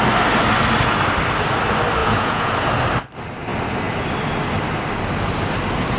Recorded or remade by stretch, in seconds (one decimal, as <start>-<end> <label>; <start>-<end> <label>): 0.0-2.0 recorded; 2.0-2.5 remade; 2.5-6.0 recorded